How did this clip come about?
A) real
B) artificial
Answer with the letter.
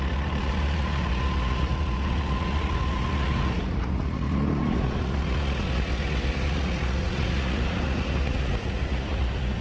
B